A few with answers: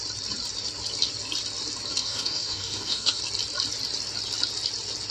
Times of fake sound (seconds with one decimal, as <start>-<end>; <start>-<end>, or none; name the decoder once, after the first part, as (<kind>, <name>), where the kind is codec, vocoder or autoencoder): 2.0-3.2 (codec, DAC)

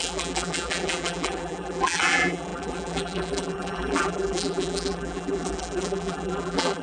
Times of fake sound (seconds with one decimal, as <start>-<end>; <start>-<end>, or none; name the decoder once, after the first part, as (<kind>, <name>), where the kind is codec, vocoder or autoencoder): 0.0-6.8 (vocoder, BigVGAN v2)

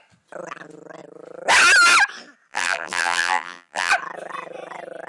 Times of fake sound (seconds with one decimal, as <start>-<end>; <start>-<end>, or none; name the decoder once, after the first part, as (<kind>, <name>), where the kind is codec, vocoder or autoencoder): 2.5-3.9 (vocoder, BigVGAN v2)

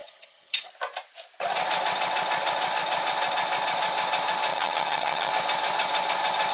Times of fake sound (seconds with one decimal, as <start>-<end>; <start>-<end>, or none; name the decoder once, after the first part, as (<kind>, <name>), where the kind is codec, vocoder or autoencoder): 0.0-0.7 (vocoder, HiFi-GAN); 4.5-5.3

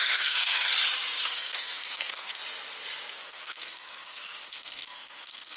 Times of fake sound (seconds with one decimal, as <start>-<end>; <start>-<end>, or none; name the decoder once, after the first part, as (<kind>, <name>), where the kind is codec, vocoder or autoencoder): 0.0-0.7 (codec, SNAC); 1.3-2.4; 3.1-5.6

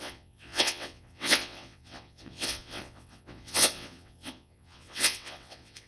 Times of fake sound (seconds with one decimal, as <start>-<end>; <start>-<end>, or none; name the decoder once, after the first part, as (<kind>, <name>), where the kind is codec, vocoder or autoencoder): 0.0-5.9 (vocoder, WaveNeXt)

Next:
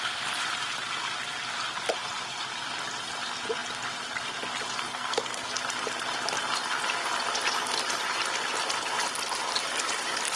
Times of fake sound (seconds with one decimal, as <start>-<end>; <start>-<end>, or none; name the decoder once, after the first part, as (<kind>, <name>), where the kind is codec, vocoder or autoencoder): 4.9-5.5 (codec, SNAC)

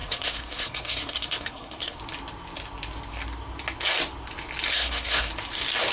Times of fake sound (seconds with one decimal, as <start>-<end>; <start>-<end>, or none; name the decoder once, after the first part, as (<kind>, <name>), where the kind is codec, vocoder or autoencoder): 0.0-2.0 (codec, SNAC); 4.7-5.3